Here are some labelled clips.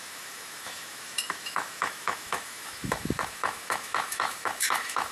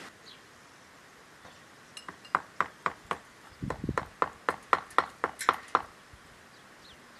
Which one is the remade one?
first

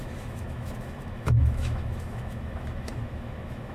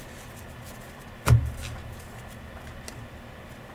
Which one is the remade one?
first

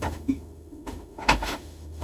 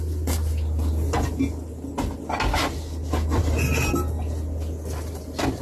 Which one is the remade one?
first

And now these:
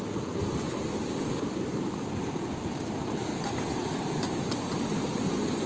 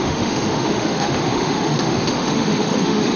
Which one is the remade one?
second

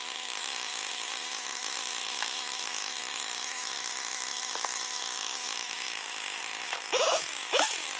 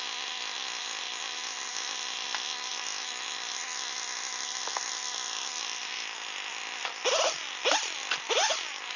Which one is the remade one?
first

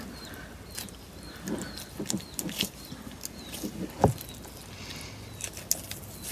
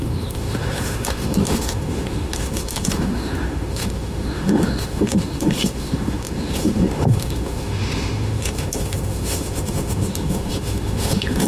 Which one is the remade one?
second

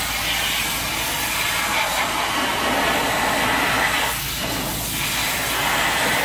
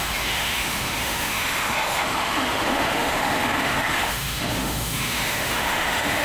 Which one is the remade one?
second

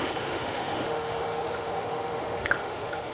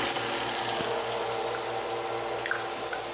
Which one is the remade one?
first